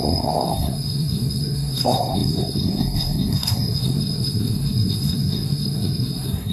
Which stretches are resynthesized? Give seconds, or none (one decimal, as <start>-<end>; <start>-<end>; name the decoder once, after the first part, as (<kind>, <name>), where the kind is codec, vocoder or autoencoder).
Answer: 0.0-6.5 (codec, SNAC)